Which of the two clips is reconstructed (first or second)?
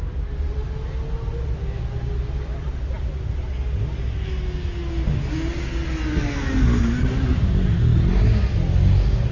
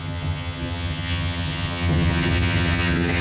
second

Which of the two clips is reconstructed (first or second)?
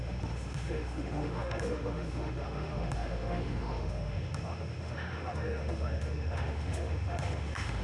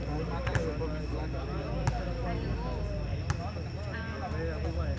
first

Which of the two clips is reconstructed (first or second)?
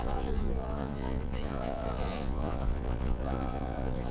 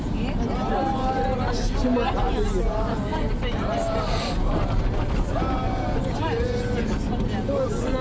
first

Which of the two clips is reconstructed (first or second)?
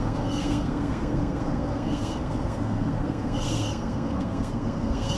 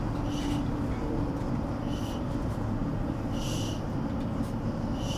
first